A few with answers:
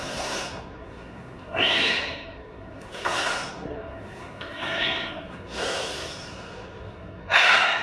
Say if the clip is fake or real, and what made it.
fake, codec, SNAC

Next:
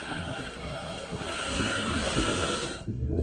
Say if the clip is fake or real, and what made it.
fake, codec, SNAC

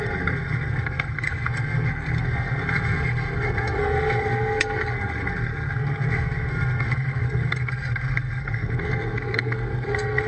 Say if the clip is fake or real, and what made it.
fake, codec, SNAC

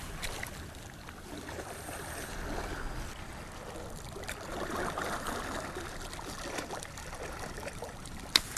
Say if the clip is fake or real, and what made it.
real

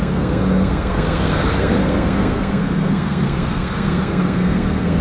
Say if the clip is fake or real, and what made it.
fake, codec, SNAC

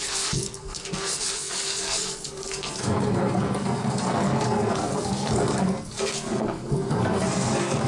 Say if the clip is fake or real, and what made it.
fake, codec, SNAC